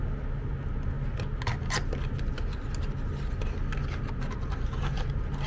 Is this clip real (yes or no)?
yes